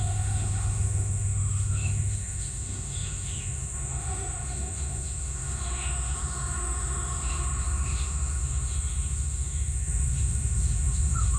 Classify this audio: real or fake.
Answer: fake